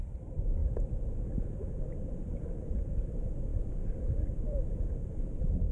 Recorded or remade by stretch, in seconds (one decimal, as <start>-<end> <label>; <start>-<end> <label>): 0.0-5.7 remade